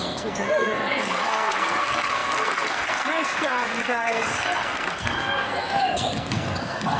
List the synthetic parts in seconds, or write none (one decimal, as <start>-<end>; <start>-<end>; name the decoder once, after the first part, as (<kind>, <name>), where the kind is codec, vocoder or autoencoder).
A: 0.0-7.0 (codec, SNAC)